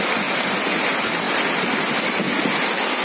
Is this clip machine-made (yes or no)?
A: no